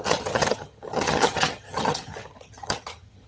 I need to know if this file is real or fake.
fake